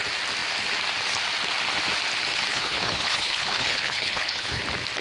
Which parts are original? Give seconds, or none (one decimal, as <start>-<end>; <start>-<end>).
0.0-2.5; 4.6-5.0